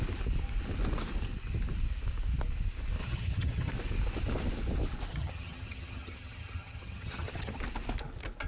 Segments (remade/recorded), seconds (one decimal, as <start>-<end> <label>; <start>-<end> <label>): 0.0-3.0 recorded; 3.0-3.7 remade; 3.7-5.1 recorded; 5.1-7.6 remade; 7.6-8.5 recorded